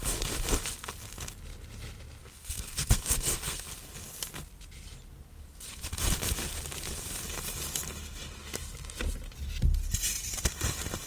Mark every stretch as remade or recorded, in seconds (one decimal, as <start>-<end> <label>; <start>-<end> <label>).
0.0-2.2 recorded; 2.2-3.7 remade; 3.7-11.1 recorded